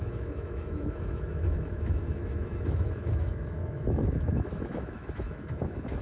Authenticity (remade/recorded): remade